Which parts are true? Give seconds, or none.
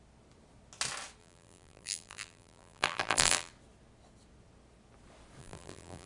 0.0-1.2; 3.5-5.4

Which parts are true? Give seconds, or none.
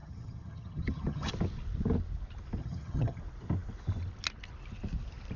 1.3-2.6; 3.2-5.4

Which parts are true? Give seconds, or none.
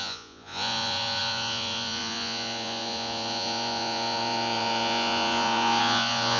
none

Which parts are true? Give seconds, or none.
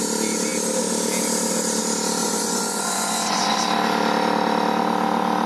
0.0-2.2; 3.6-5.5